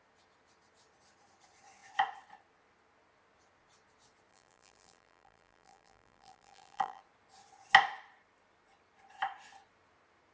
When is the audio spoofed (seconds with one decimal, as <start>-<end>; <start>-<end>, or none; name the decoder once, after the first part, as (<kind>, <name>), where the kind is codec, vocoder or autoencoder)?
4.3-7.0 (vocoder, BigVGAN v2)